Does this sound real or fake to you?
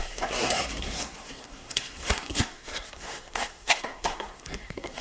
fake